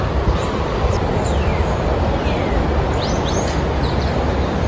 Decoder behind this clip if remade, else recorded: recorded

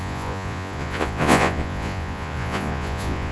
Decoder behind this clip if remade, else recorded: remade, vocoder, Vocos